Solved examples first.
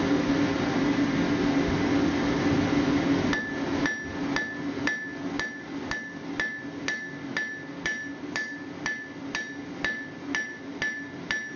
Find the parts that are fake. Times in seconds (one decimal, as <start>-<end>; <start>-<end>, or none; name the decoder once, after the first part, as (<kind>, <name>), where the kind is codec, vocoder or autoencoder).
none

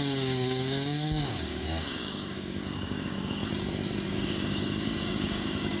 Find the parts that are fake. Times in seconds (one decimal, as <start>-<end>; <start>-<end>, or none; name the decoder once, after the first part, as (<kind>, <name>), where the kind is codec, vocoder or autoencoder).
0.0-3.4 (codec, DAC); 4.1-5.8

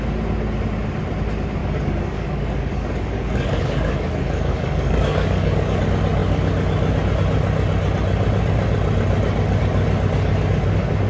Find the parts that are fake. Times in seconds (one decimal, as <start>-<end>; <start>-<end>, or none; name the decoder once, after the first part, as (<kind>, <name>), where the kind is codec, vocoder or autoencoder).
1.6-5.8 (codec, DAC)